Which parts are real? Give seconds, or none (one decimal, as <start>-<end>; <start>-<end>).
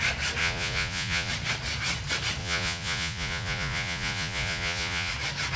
0.0-0.4; 1.3-2.4; 5.1-5.6